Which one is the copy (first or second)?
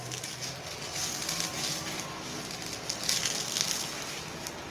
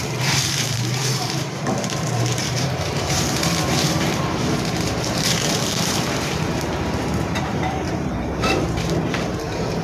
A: second